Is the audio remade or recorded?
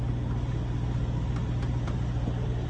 recorded